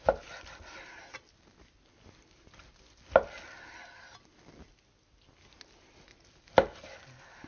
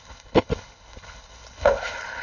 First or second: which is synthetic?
second